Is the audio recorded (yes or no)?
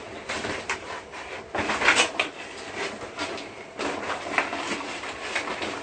yes